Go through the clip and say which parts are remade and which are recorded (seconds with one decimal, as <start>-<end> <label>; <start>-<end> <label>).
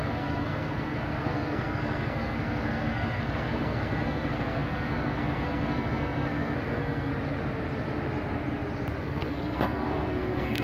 0.0-7.1 remade; 7.1-9.0 recorded; 9.0-10.6 remade